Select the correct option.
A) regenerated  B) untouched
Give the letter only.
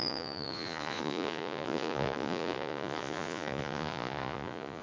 A